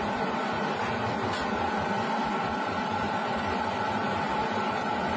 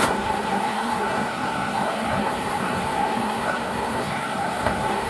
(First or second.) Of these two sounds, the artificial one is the second